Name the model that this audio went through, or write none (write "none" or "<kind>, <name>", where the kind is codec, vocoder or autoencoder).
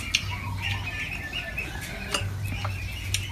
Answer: none